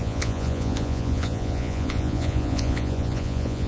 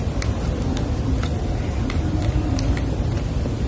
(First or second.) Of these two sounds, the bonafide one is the second